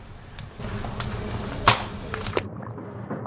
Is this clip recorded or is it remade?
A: recorded